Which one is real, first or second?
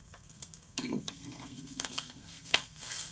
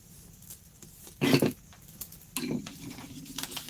second